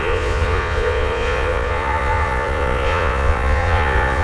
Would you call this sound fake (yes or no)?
yes